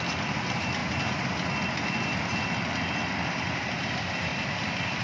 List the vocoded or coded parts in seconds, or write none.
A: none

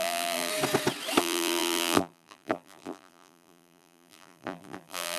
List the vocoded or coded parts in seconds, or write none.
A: 0.0-0.5 (vocoder, BigVGAN v2); 1.2-5.2